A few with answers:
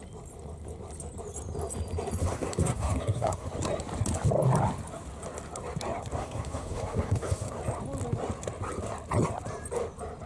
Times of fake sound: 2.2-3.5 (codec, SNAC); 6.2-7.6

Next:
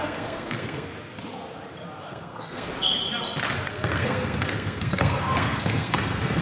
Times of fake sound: 0.0-0.9 (codec, SNAC); 2.0-2.7; 3.7-6.4